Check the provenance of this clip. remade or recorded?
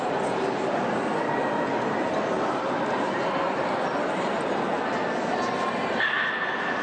recorded